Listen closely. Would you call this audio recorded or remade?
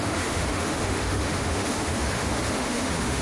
remade